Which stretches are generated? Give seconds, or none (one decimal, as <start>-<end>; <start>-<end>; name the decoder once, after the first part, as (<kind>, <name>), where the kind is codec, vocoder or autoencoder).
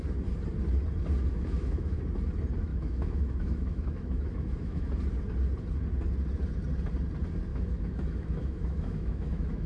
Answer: 1.3-2.0 (autoencoder, DAC-VAE); 2.7-4.9; 7.5-9.7